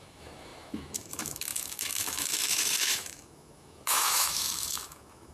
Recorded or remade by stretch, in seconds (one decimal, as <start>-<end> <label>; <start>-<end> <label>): 0.0-5.3 remade